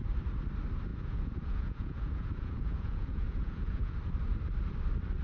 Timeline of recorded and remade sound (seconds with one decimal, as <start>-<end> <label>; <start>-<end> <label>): 0.0-0.9 recorded; 0.9-4.0 remade; 4.0-5.2 recorded